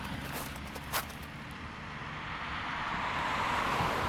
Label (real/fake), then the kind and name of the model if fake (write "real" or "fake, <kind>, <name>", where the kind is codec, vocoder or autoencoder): real